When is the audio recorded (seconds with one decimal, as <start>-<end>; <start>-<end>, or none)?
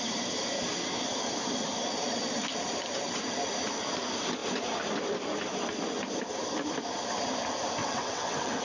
0.0-7.8